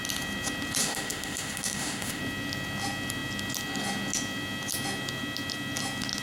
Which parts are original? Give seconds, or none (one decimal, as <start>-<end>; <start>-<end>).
0.0-0.8; 2.2-6.2